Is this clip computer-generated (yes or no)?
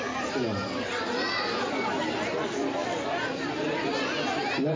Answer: no